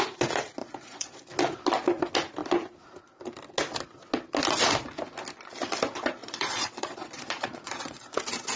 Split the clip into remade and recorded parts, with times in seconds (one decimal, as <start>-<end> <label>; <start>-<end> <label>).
0.0-0.6 recorded; 0.6-1.2 remade; 1.2-6.2 recorded; 6.2-8.2 remade; 8.2-8.6 recorded